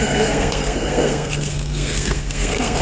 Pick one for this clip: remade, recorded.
remade